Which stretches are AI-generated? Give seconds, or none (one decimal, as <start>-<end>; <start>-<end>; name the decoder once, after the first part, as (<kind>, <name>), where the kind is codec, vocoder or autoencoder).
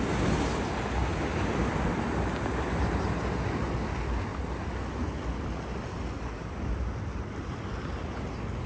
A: none